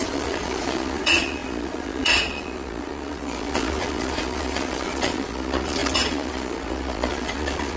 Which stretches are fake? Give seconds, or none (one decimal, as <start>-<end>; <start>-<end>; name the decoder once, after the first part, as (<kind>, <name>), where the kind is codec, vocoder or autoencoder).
0.0-7.8 (vocoder, Vocos)